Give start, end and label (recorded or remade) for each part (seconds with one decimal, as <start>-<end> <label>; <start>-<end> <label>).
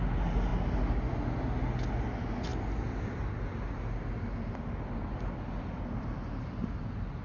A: 0.0-7.2 recorded